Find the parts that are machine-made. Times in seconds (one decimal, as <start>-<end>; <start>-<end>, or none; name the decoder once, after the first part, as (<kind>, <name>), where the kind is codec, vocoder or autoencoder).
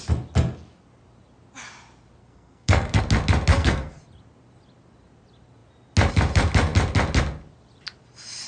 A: 2.2-3.0 (codec, SNAC); 3.5-4.0